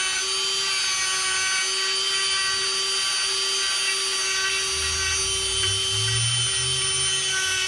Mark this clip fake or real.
real